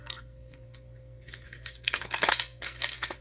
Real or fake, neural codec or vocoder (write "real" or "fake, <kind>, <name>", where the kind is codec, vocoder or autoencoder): fake, codec, SNAC